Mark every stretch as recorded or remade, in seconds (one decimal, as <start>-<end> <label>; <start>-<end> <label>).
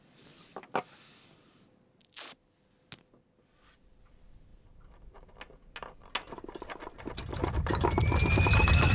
0.0-8.9 recorded